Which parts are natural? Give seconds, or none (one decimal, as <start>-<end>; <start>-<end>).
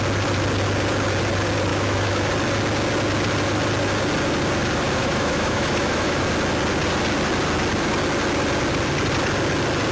0.0-1.7; 2.3-5.0; 6.2-9.9